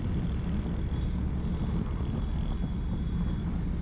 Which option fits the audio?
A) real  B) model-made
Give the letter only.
A